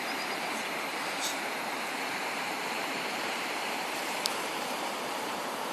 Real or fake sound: fake